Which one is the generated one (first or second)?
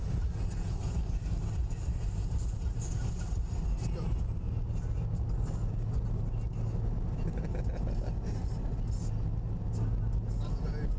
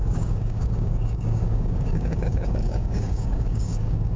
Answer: second